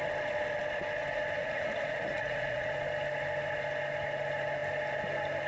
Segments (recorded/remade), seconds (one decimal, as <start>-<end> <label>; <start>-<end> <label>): 0.0-1.4 recorded; 1.4-2.7 remade; 2.7-5.5 recorded